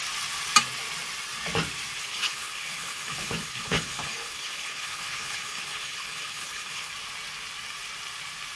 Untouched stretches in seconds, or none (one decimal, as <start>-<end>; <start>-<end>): 0.0-2.0; 6.9-8.6